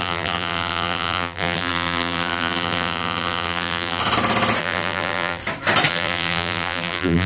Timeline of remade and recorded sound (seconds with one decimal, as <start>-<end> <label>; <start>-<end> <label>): 0.0-4.0 remade; 4.0-4.6 recorded; 4.6-5.4 remade; 5.4-5.9 recorded; 5.9-7.3 remade